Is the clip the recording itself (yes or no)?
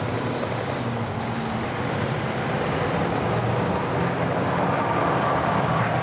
yes